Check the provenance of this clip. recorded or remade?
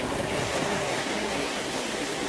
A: remade